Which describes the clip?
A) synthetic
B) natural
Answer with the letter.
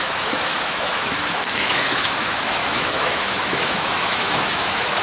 A